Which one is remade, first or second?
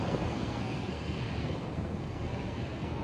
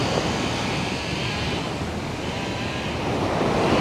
first